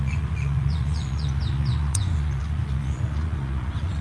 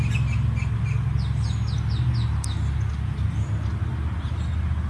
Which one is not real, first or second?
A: first